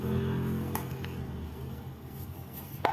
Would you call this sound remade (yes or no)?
yes